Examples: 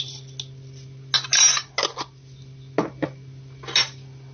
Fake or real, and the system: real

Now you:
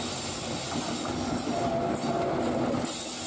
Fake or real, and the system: real